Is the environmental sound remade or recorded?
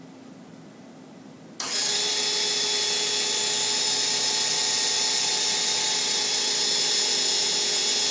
recorded